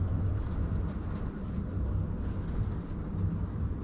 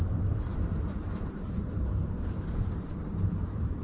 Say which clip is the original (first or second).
first